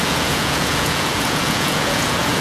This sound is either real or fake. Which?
fake